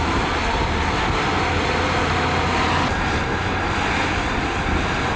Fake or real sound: real